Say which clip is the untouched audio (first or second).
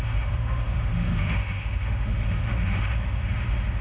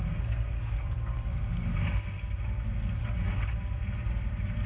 second